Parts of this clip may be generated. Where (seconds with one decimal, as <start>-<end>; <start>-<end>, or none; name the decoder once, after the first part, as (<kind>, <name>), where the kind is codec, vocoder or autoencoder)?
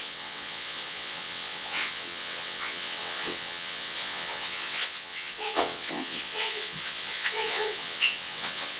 0.0-8.8 (vocoder, WaveNeXt)